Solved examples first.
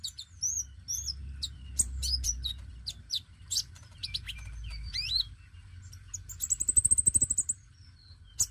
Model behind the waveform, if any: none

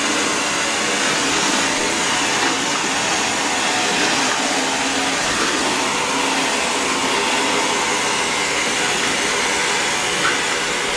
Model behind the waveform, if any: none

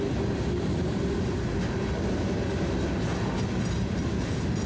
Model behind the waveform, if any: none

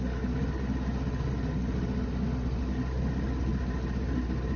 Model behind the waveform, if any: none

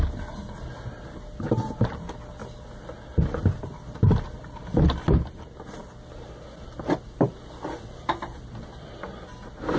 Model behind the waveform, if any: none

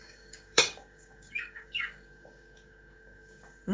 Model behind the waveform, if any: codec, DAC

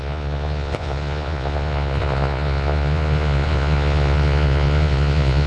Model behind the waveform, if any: vocoder, Vocos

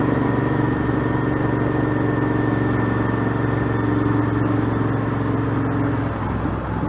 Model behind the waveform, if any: none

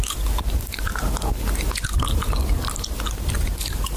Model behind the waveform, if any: none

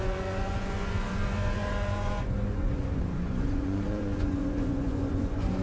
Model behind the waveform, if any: vocoder, Vocos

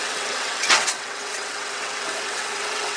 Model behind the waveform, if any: vocoder, WaveNeXt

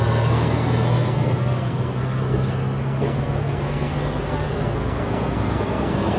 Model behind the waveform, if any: codec, SNAC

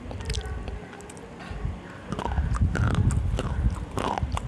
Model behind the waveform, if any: none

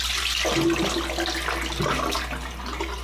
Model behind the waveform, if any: none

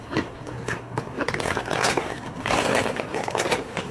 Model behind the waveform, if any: codec, SNAC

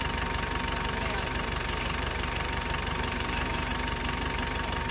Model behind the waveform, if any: vocoder, BigVGAN v2